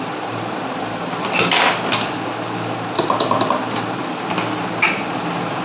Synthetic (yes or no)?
no